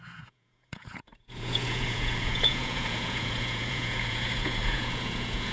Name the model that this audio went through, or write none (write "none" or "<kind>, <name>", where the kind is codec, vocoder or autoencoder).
vocoder, Vocos